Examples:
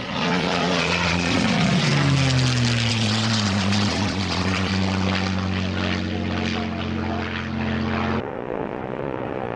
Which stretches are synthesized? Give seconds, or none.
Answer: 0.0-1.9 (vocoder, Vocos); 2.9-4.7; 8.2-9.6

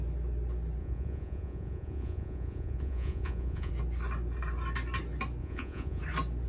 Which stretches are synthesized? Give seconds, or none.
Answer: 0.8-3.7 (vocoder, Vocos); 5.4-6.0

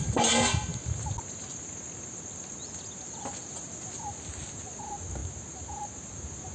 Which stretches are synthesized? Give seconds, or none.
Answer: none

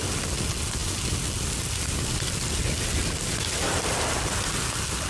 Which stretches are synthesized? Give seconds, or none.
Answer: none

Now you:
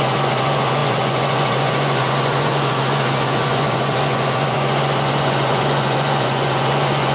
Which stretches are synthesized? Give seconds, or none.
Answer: 0.0-7.1 (vocoder, Vocos)

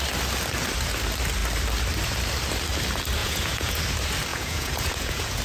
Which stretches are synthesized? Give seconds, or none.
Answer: 3.2-3.8 (vocoder, Vocos); 4.3-5.4

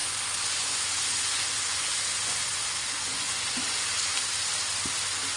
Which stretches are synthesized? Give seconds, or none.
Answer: 0.0-4.1 (vocoder, Vocos)

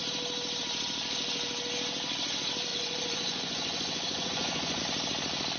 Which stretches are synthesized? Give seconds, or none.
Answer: 2.7-4.8 (vocoder, Vocos)